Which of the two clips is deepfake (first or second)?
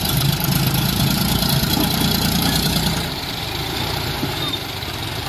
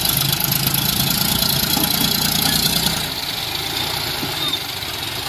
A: first